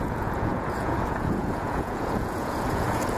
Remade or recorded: remade